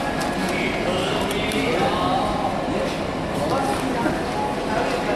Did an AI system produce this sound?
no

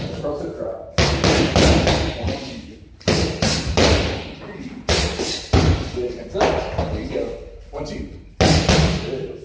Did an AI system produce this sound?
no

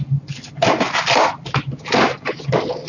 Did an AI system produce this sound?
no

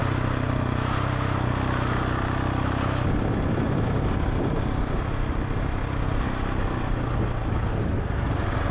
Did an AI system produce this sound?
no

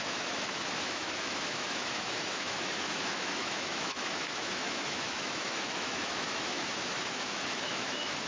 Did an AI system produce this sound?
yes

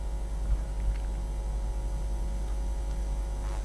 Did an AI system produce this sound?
no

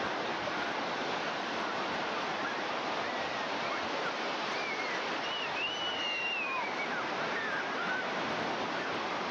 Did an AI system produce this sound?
no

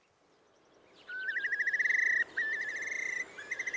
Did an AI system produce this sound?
no